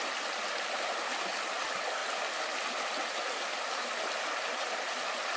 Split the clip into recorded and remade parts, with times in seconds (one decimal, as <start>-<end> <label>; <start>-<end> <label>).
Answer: 0.0-2.0 recorded; 2.0-5.4 remade